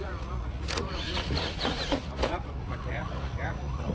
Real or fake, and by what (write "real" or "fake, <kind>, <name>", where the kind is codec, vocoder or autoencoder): fake, vocoder, Vocos